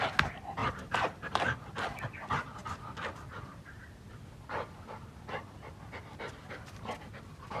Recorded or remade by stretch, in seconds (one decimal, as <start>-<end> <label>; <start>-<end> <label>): 0.0-0.6 recorded; 0.6-1.4 remade; 1.4-7.6 recorded